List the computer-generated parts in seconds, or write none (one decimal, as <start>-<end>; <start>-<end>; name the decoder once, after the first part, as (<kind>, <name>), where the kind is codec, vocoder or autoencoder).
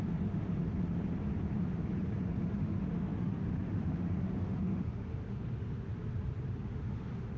0.0-0.6 (autoencoder, DAC-VAE); 2.4-5.9; 6.5-7.4